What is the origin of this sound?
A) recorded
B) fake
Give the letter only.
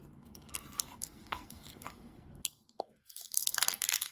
B